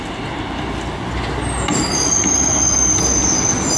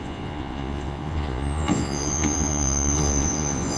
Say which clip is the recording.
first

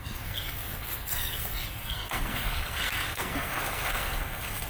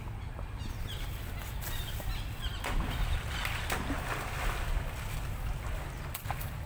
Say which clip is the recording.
second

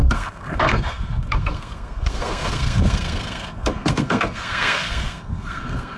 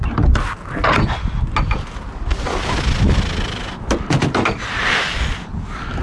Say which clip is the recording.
second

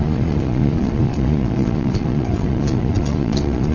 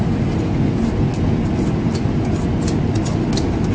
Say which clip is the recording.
second